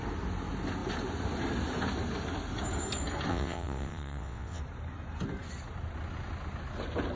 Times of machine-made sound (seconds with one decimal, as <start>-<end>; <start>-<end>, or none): 3.3-4.6